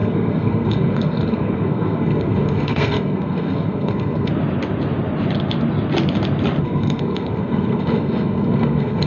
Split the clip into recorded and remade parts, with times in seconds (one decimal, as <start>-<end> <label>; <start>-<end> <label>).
0.0-4.3 remade; 4.3-6.6 recorded; 6.6-9.1 remade